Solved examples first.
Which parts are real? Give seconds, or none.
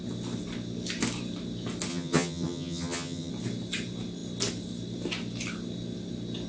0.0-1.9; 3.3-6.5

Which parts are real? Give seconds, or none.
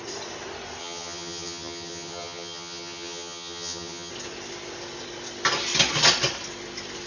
0.0-0.8; 4.1-7.1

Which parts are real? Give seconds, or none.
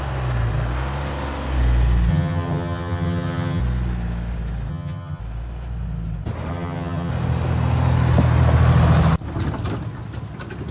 0.0-2.1; 3.6-4.7; 5.2-6.5; 7.1-10.7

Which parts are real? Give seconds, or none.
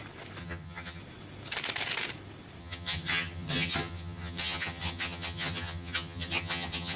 0.0-0.4; 1.0-2.6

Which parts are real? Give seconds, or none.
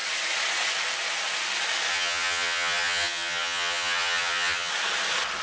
0.0-1.9; 4.7-5.4